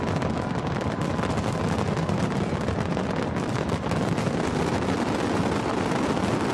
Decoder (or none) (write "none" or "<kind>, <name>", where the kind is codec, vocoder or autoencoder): none